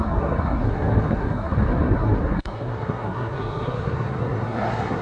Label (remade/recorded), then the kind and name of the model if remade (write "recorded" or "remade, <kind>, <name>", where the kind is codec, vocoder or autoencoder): remade, codec, SNAC